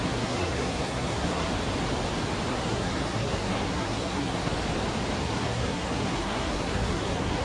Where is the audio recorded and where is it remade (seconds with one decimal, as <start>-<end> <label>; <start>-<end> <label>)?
0.0-1.5 remade; 1.5-2.5 recorded; 2.5-4.5 remade; 4.5-5.2 recorded; 5.2-7.4 remade